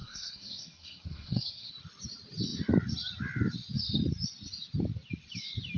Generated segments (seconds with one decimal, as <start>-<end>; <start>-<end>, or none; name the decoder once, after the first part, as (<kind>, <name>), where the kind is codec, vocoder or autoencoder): 0.0-1.7 (codec, SNAC)